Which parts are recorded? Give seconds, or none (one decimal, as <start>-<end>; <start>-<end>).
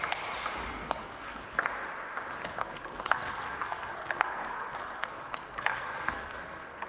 0.0-0.7; 1.4-2.6